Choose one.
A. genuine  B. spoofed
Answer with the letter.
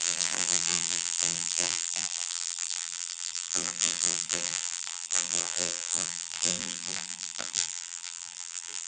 B